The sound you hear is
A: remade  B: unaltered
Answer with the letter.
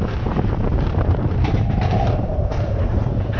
A